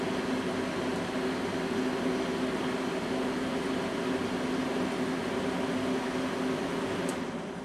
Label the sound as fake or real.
real